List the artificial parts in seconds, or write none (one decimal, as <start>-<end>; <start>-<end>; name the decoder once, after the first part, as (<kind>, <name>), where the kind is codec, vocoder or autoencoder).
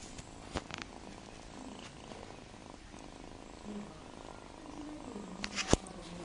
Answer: none